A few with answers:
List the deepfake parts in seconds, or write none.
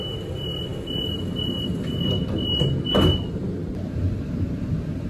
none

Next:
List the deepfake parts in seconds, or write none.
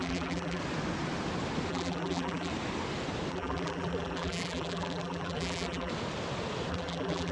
0.0-0.6 (vocoder, BigVGAN v2); 1.7-2.5; 3.3-5.9; 6.7-7.3